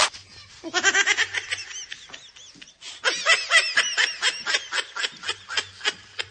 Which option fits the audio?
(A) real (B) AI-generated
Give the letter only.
A